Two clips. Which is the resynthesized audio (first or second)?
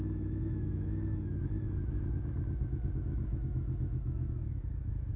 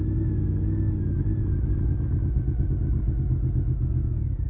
first